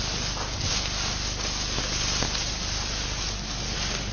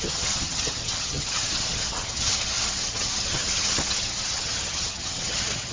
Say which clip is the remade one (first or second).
second